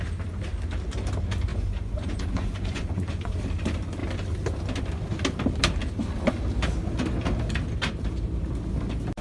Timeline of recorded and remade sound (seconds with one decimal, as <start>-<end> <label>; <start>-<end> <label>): 0.0-1.5 recorded; 1.5-3.4 remade; 3.4-9.2 recorded